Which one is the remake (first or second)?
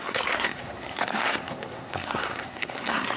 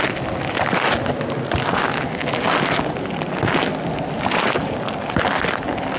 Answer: first